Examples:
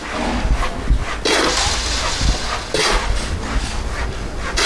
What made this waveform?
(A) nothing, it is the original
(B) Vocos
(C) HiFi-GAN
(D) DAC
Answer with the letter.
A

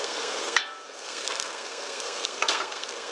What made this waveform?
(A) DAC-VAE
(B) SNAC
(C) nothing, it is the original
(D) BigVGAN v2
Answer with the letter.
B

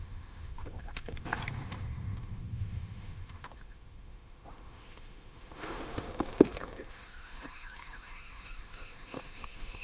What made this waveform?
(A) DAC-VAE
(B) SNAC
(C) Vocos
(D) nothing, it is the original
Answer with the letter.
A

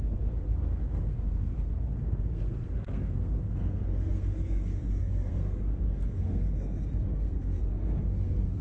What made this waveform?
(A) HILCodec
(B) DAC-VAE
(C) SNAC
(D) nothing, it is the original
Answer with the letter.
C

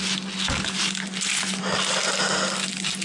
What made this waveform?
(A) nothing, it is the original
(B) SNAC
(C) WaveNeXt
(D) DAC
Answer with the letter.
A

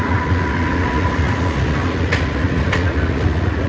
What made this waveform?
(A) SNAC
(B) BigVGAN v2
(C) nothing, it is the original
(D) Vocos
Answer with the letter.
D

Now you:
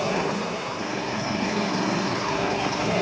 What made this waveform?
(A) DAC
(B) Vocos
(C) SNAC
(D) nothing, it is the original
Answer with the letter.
C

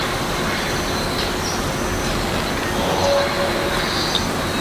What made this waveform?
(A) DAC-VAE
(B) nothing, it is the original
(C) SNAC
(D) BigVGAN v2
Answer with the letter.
B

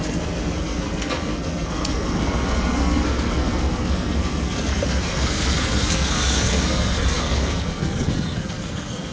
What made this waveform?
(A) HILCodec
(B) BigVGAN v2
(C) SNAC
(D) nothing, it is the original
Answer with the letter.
C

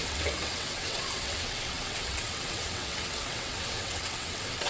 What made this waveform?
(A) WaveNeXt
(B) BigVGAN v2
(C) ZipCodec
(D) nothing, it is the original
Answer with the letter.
A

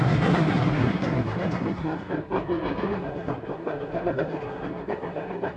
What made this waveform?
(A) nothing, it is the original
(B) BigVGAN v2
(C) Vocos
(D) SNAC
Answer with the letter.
D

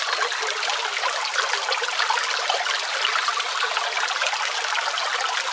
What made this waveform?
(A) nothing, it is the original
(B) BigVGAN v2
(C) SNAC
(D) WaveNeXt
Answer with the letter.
A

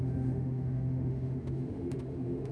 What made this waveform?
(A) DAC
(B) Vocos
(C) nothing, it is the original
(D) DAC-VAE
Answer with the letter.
D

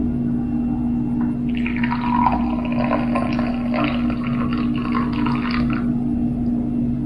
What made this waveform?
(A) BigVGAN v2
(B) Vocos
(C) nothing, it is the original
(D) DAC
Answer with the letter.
C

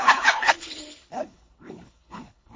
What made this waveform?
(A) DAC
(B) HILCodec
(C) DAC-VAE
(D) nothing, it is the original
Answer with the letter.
B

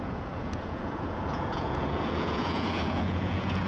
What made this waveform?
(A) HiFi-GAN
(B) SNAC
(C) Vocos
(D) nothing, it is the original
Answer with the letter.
C